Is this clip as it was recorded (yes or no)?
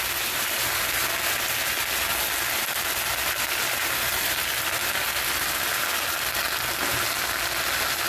yes